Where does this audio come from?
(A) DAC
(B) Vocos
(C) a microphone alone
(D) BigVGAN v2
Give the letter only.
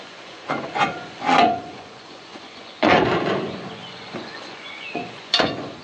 B